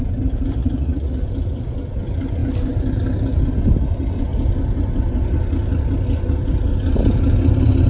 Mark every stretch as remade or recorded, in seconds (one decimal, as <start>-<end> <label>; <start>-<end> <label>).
0.0-0.6 recorded; 0.6-1.2 remade; 1.2-7.9 recorded